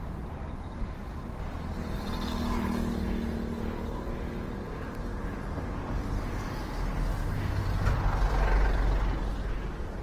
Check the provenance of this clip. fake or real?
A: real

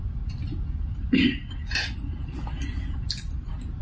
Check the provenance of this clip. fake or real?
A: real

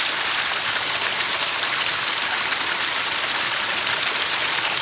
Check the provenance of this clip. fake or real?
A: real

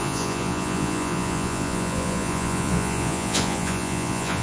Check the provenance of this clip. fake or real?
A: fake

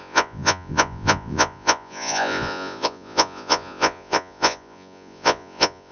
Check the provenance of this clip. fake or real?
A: fake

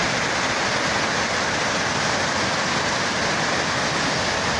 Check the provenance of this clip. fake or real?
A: real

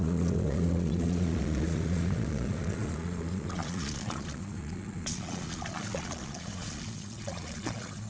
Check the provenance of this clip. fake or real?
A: fake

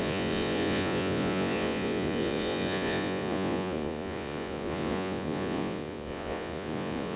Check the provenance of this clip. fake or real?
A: fake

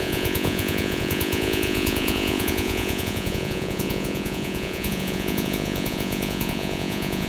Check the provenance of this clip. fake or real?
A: fake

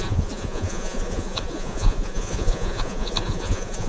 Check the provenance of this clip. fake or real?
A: fake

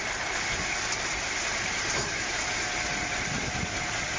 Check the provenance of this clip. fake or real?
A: real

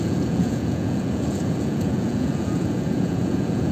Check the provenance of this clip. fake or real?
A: fake